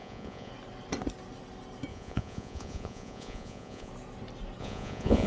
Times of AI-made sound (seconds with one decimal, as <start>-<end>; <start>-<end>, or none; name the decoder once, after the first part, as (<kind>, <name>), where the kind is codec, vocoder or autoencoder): 0.0-0.5 (vocoder, Vocos); 1.9-3.9; 4.6-5.3